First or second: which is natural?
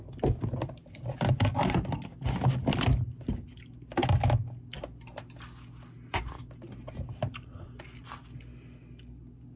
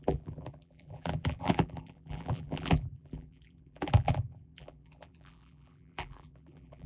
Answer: first